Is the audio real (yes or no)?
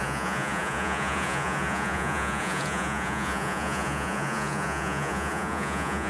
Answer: no